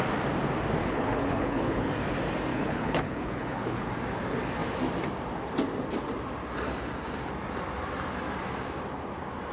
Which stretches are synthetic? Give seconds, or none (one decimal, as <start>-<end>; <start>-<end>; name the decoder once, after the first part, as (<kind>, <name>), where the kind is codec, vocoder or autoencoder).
0.8-1.9 (codec, HILCodec); 2.5-3.9